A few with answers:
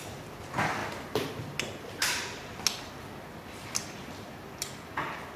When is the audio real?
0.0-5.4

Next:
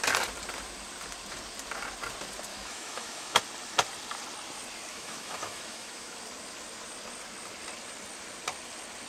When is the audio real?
0.0-2.5; 3.4-4.9; 6.2-9.1